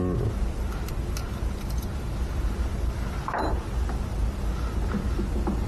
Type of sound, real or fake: real